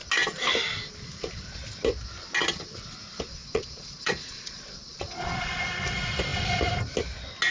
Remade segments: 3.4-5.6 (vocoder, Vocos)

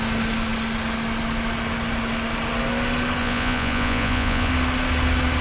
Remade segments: 3.2-4.5 (vocoder, Vocos)

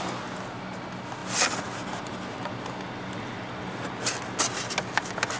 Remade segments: none

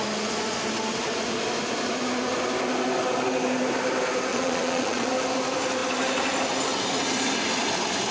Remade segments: 4.3-5.1 (vocoder, Vocos)

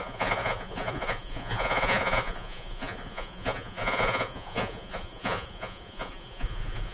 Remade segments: 0.0-6.9 (vocoder, Vocos)